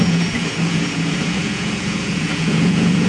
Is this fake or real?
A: fake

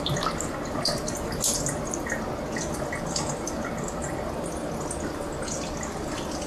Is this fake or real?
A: real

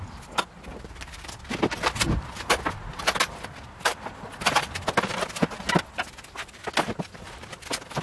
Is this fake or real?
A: real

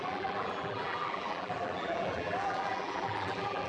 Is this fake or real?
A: fake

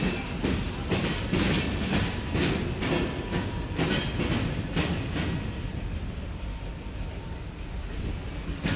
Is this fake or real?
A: real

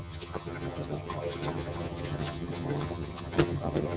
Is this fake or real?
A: fake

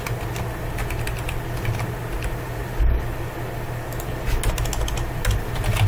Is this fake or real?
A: real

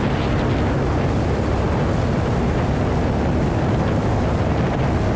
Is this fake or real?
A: real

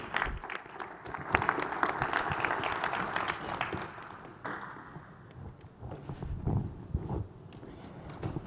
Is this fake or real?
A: real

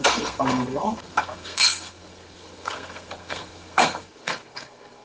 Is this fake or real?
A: fake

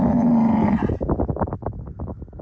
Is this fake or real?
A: real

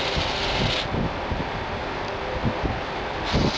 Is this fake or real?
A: real